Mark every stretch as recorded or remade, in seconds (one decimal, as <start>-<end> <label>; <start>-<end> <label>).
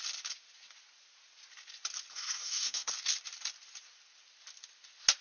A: 0.0-2.1 recorded; 2.1-2.9 remade; 2.9-5.2 recorded